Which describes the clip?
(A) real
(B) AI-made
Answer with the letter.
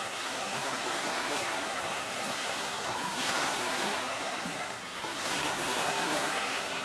B